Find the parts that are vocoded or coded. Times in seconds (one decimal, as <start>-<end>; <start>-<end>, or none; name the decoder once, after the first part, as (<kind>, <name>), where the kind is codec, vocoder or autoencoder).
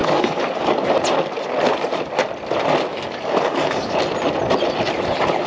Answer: 0.0-1.0 (codec, DAC); 2.9-4.0